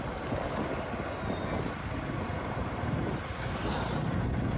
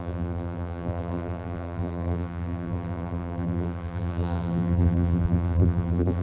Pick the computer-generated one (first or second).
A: second